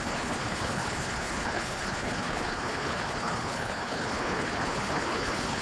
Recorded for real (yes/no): no